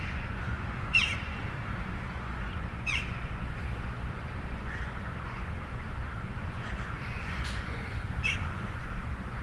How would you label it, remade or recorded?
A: remade